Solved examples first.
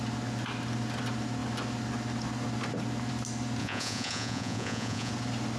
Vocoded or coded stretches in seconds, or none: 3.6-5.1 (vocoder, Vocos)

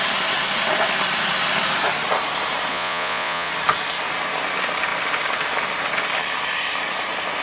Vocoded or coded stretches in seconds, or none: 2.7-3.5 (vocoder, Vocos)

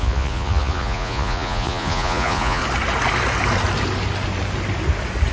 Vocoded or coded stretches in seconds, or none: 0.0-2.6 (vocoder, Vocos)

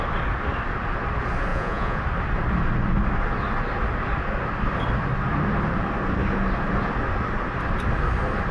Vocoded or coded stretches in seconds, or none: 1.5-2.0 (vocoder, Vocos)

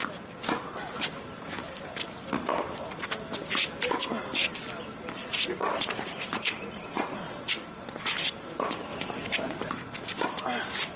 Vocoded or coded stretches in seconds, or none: 5.2-7.3 (vocoder, Vocos)

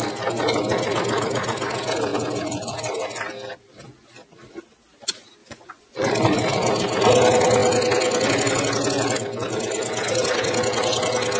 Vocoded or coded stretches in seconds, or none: 5.4-6.1 (vocoder, Vocos)

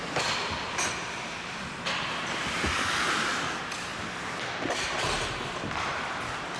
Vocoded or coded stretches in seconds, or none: none